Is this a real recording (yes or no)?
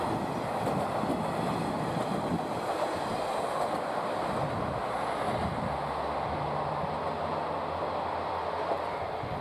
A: yes